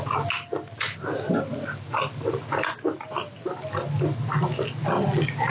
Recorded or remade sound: recorded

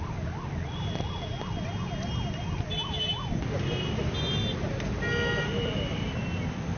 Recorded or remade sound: recorded